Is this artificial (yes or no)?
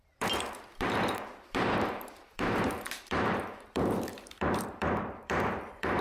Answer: yes